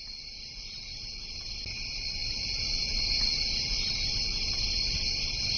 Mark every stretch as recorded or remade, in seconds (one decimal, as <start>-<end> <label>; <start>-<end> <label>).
0.0-5.6 recorded